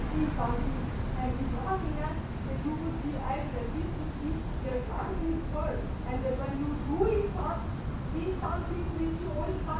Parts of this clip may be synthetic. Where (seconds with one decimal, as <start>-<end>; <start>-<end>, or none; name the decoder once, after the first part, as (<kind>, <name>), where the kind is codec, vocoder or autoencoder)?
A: 4.7-5.4 (autoencoder, DAC-VAE)